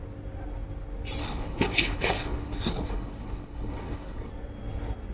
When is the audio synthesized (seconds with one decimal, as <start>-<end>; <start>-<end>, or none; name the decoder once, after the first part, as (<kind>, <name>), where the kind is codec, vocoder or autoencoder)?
1.2-4.3 (codec, HILCodec)